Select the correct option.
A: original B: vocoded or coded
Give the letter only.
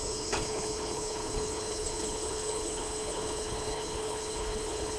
B